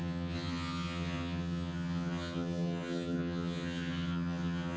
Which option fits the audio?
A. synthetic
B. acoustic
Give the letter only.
A